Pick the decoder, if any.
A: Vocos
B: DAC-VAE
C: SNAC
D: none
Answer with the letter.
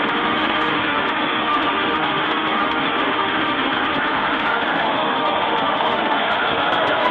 B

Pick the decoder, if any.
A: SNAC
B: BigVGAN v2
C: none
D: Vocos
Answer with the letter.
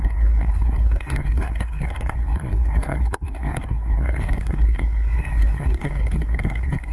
A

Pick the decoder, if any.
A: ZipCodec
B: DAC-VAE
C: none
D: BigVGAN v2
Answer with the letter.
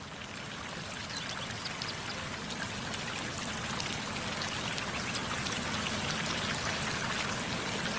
C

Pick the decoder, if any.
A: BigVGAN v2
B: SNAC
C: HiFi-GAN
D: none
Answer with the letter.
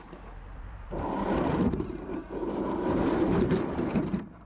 A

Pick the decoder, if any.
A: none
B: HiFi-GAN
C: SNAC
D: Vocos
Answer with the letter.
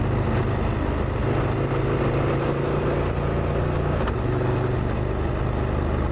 A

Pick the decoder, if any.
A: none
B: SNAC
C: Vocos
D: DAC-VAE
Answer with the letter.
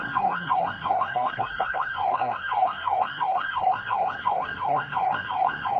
B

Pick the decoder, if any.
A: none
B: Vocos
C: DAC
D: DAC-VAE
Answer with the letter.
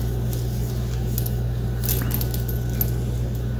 A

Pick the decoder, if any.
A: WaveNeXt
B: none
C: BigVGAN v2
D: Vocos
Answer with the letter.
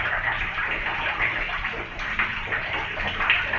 C